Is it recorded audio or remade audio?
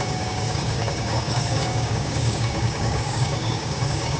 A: remade